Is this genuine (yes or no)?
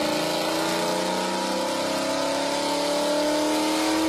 yes